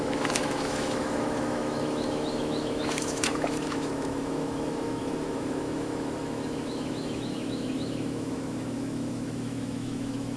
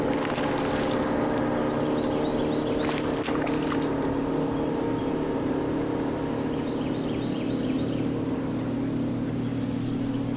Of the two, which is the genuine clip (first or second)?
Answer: second